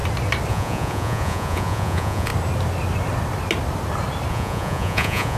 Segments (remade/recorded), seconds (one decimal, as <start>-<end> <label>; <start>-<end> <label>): 0.0-0.5 recorded; 0.5-2.3 remade; 2.3-4.3 recorded; 4.3-5.4 remade